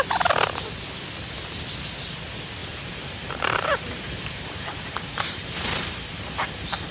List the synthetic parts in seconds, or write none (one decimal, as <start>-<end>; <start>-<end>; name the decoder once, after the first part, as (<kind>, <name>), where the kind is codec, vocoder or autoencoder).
2.6-6.9 (vocoder, BigVGAN v2)